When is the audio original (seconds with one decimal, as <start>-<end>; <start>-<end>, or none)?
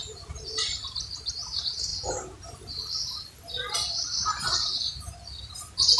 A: 0.0-6.0